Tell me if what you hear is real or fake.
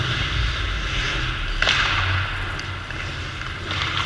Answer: real